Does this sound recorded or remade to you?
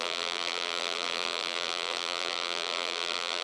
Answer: remade